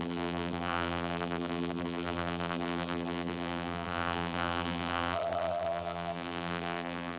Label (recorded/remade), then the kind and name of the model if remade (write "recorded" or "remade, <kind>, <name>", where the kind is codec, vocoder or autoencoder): remade, vocoder, BigVGAN v2